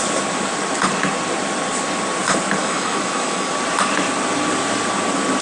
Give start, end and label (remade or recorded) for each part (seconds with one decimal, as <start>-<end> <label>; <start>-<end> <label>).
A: 0.0-2.6 recorded; 2.6-3.5 remade; 3.5-5.4 recorded